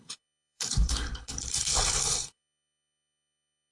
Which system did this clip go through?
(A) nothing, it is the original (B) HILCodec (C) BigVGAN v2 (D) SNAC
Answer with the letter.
B